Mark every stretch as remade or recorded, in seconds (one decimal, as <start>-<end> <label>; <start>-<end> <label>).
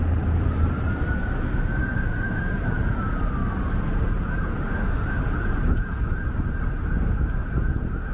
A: 0.0-1.8 recorded; 1.8-2.4 remade; 2.4-4.5 recorded; 4.5-5.2 remade; 5.2-8.1 recorded